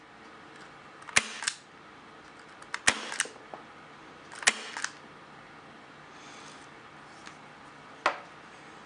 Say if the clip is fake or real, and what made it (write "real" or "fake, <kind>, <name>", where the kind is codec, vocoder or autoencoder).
real